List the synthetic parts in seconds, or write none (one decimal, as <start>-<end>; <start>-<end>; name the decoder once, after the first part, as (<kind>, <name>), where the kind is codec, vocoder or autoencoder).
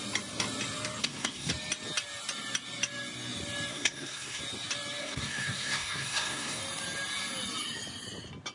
1.0-1.5 (codec, SNAC); 3.7-4.4; 5.0-6.6